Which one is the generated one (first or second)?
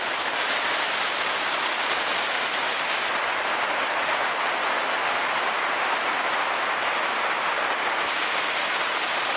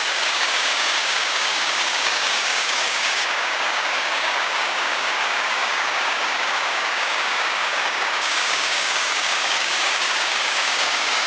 second